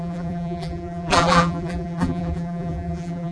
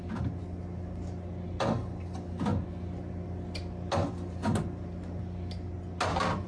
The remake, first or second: first